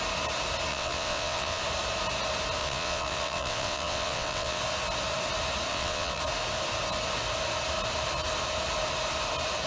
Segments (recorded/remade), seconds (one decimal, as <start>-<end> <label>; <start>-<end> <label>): 0.0-0.7 recorded; 0.7-1.6 remade; 1.6-2.6 recorded; 2.6-4.6 remade; 4.6-5.7 recorded; 5.7-6.2 remade; 6.2-9.7 recorded